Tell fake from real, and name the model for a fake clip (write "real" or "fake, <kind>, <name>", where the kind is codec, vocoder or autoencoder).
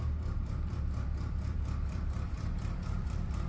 fake, vocoder, BigVGAN v2